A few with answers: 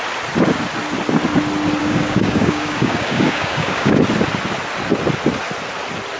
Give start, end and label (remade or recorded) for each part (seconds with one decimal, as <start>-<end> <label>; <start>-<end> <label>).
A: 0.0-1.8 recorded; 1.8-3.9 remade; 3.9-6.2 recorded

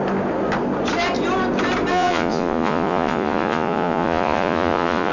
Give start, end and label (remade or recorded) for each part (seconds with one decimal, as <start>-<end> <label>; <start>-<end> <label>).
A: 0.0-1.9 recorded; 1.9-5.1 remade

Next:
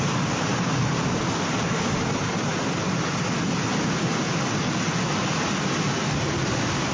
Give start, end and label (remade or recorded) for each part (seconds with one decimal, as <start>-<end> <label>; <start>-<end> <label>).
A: 0.0-6.9 recorded